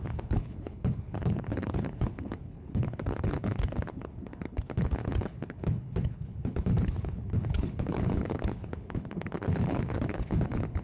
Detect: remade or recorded remade